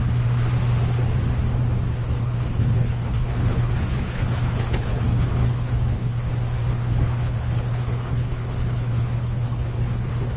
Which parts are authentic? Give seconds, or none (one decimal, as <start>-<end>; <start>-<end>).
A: 0.0-2.2; 6.3-6.7